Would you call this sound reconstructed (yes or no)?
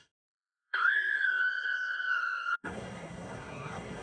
yes